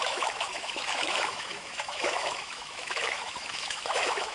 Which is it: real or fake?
fake